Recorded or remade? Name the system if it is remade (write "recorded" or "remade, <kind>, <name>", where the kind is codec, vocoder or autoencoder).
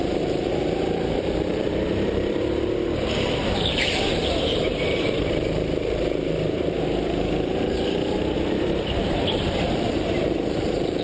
remade, vocoder, BigVGAN v2